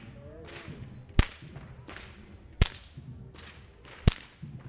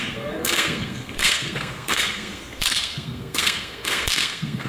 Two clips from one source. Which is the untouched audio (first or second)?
first